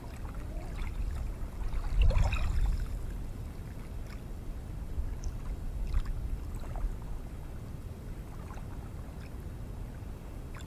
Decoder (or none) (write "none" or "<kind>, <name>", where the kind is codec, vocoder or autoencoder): none